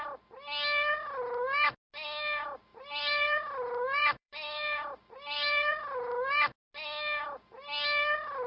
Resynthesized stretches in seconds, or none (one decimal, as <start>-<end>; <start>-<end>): 2.7-3.4; 4.0-5.8